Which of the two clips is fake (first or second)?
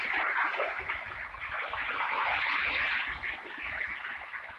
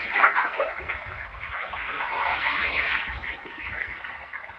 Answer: second